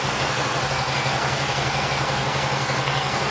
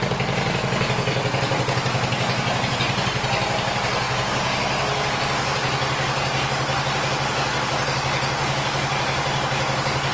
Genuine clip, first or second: second